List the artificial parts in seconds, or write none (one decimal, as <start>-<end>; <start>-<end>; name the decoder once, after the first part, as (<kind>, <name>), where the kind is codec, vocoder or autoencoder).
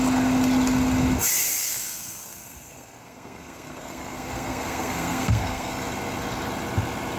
1.6-5.7 (codec, SNAC)